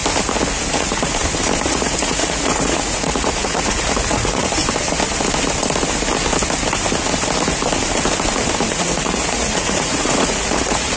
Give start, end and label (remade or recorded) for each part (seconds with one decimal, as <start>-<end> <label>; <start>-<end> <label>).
0.0-0.7 recorded; 0.7-1.2 remade; 1.2-1.7 recorded; 1.7-4.6 remade; 4.6-8.7 recorded; 8.7-11.0 remade